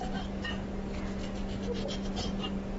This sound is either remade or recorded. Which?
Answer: recorded